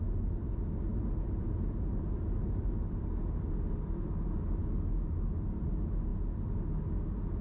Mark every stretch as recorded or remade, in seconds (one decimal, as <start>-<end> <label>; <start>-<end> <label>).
0.0-7.4 recorded